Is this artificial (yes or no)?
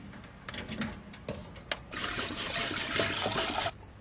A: no